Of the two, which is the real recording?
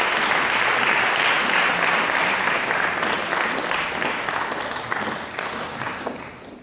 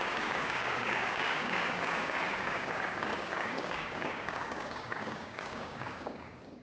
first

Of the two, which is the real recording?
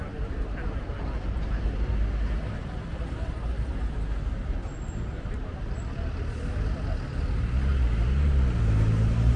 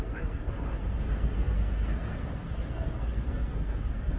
first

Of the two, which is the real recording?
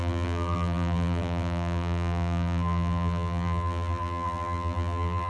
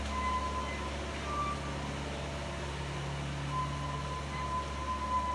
second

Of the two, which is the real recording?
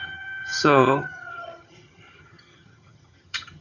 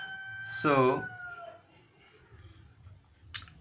second